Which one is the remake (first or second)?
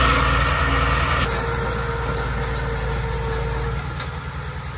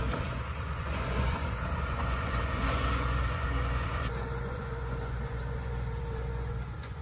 second